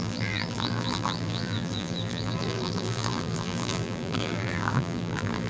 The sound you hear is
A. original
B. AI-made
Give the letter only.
B